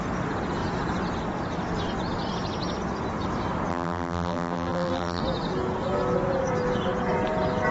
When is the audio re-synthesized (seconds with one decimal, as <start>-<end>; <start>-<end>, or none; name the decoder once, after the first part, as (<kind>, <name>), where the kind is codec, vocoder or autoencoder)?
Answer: 3.7-5.2 (vocoder, BigVGAN v2)